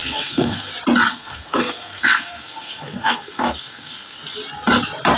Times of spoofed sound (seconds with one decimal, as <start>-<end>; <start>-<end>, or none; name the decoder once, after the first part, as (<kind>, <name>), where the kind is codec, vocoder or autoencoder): 0.0-0.7 (codec, SNAC); 1.1-4.2